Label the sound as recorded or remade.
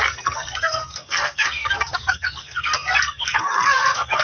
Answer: remade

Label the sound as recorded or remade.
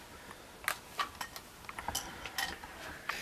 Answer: recorded